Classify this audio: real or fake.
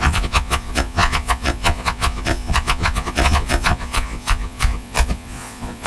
fake